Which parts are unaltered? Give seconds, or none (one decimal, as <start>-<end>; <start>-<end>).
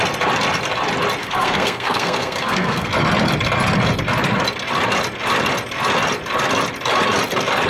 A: 0.0-1.2; 2.9-7.7